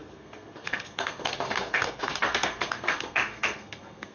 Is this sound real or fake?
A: fake